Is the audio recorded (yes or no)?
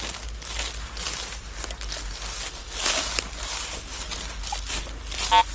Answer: yes